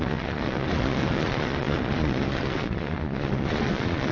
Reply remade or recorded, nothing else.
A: remade